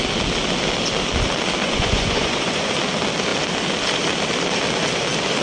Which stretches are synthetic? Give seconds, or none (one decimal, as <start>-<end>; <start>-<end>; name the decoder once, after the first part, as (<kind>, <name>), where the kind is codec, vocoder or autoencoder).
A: 1.6-2.7 (vocoder, Vocos)